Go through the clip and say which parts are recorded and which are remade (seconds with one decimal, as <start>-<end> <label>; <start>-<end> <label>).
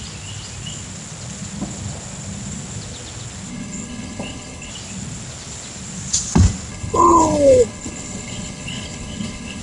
0.0-3.5 recorded; 3.5-4.7 remade; 4.7-6.7 recorded; 6.7-9.6 remade